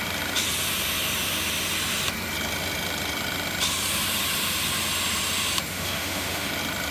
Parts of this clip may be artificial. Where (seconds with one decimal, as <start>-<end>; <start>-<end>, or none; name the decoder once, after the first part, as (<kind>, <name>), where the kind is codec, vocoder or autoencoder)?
5.7-6.5 (autoencoder, DAC-VAE)